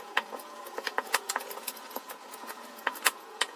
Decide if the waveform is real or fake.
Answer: fake